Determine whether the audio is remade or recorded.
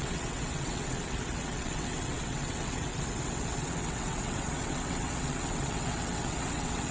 remade